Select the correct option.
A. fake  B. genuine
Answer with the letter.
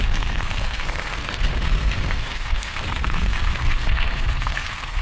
A